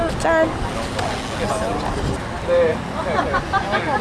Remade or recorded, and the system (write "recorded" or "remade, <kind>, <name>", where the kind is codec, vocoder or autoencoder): recorded